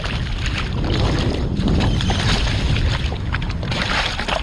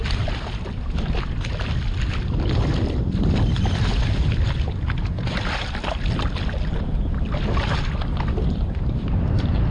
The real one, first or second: first